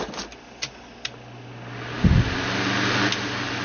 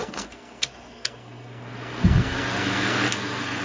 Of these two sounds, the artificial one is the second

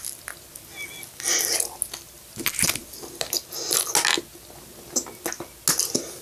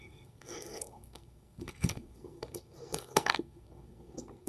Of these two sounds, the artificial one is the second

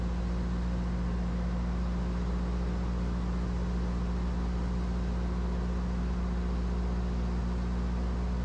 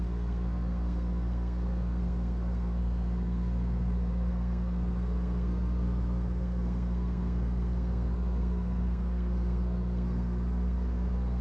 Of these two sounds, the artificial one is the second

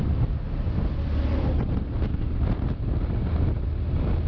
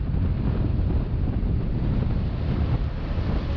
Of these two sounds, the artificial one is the second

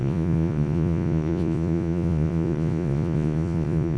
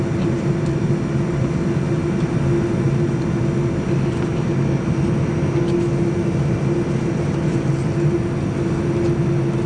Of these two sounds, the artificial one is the first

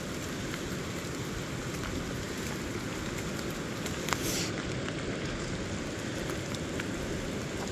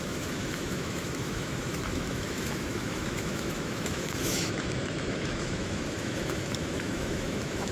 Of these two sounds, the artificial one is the second